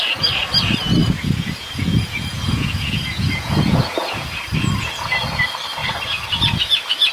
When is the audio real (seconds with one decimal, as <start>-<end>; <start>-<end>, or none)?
0.0-1.0; 4.4-7.1